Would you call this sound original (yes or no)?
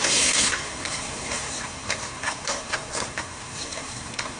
no